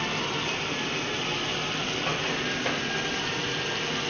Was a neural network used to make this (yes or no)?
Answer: no